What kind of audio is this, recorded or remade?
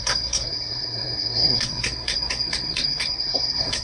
remade